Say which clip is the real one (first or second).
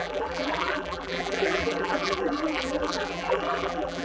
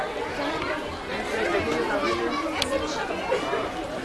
second